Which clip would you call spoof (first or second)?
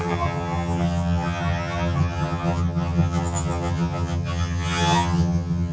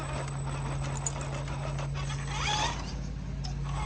first